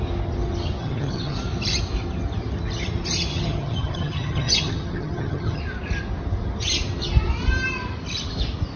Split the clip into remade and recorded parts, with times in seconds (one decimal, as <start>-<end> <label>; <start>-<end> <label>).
0.0-0.8 recorded; 0.8-1.4 remade; 1.4-3.3 recorded; 3.3-5.6 remade; 5.6-8.8 recorded

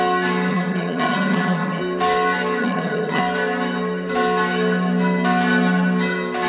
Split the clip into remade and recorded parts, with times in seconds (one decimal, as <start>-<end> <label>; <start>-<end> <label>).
0.0-0.5 recorded; 0.5-1.8 remade; 1.8-2.6 recorded; 2.6-3.2 remade; 3.2-6.5 recorded

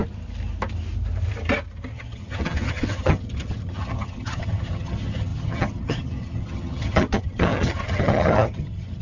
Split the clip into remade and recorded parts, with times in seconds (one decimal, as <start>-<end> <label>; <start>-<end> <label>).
0.0-1.9 recorded; 1.9-9.0 remade

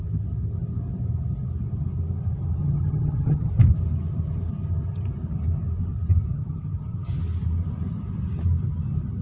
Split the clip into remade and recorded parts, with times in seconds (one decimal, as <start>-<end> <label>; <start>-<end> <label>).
0.0-2.6 recorded; 2.6-3.5 remade; 3.5-6.3 recorded; 6.3-7.2 remade; 7.2-9.2 recorded